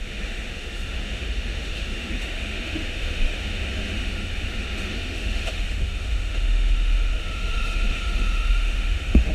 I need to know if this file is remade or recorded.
remade